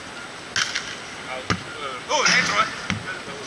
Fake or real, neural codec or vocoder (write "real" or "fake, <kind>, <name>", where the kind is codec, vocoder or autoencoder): real